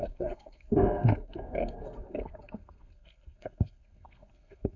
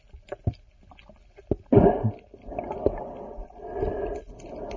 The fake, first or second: first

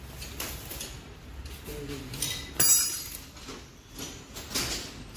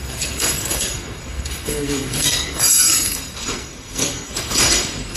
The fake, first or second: second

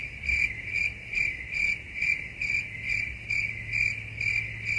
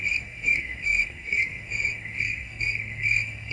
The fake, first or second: second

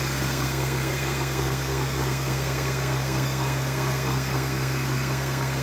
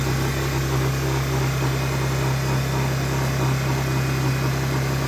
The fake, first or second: first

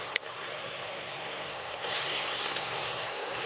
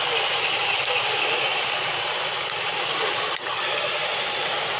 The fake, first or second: first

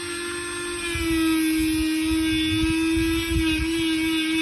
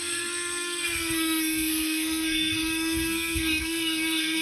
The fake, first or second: second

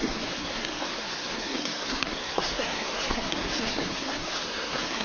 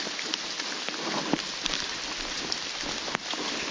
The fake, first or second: first